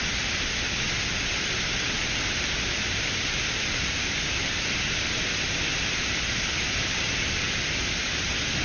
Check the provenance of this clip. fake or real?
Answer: fake